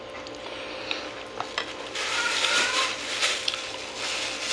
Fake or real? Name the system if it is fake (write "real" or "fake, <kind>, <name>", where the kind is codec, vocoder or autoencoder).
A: real